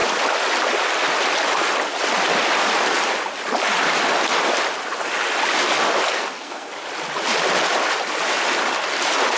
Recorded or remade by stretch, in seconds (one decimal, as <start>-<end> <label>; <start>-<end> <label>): 0.0-6.1 recorded; 6.1-6.7 remade; 6.7-9.4 recorded